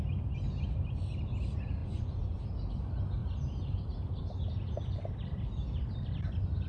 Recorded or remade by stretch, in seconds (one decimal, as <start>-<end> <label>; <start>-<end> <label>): 0.0-1.8 recorded; 1.8-2.4 remade; 2.4-6.7 recorded